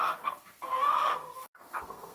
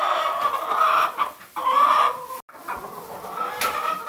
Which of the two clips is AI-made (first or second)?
first